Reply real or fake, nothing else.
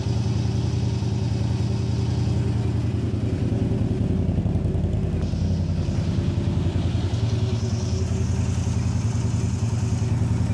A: real